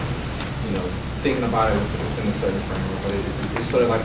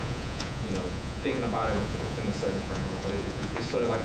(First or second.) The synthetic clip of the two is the second